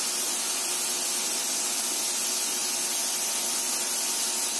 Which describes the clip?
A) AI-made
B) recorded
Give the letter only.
B